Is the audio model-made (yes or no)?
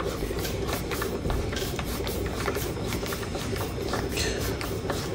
yes